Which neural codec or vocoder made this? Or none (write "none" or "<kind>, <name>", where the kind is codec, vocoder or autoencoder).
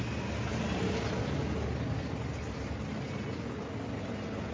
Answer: none